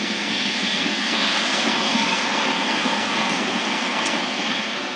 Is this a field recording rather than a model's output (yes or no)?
no